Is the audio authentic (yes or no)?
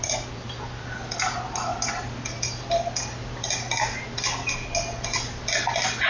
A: yes